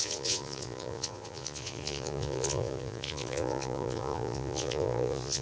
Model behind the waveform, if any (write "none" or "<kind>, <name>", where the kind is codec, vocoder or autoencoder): vocoder, Vocos